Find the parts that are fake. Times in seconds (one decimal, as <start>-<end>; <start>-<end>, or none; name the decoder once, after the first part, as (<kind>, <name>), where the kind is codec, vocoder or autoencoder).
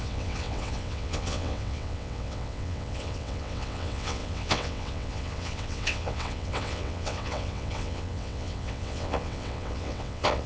0.0-10.5 (vocoder, WaveNeXt)